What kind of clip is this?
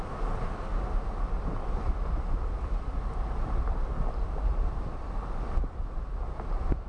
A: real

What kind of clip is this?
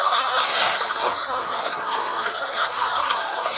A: fake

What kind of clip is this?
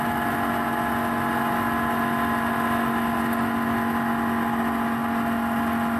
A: real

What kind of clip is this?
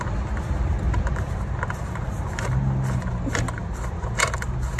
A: real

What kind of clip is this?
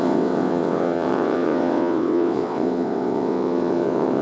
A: fake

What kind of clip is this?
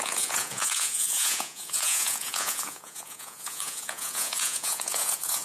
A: fake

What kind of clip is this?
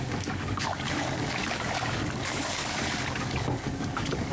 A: fake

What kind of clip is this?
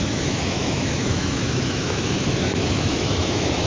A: fake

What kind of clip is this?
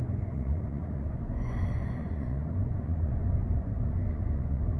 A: fake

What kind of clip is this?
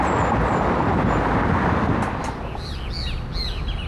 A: real